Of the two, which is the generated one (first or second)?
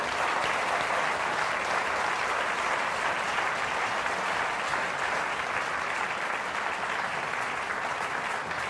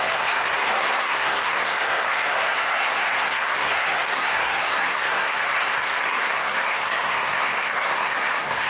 second